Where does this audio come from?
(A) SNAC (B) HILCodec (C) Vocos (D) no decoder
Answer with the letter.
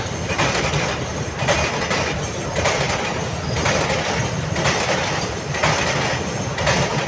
D